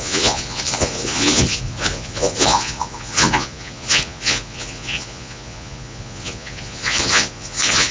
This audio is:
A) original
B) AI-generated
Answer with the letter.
B